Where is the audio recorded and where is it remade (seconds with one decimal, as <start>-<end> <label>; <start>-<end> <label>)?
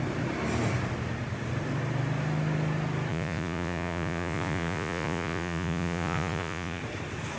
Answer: 0.0-3.1 recorded; 3.1-6.8 remade; 6.8-7.4 recorded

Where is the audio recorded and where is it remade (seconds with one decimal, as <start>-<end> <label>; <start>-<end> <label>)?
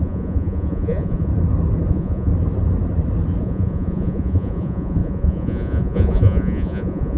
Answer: 0.0-1.3 remade; 1.3-1.9 recorded; 1.9-2.3 remade; 2.3-3.4 recorded; 3.4-7.2 remade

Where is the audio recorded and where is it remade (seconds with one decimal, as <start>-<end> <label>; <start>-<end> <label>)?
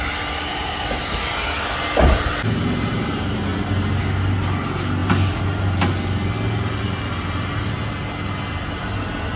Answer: 0.0-9.4 recorded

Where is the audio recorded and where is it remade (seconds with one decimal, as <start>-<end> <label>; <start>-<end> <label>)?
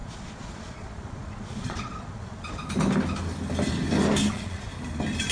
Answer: 0.0-2.6 remade; 2.6-4.3 recorded; 4.3-4.7 remade; 4.7-5.3 recorded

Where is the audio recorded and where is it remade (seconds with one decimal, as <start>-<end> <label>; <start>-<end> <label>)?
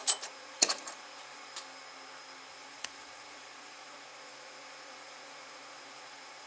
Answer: 0.0-1.5 remade; 1.5-2.6 recorded; 2.6-6.5 remade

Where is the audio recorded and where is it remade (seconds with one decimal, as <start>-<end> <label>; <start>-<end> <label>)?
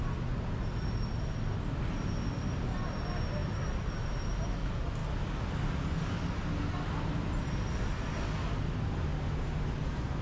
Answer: 0.0-10.2 recorded